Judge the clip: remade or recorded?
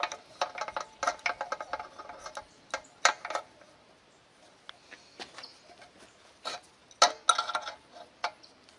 recorded